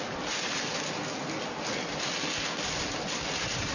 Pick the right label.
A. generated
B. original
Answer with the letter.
B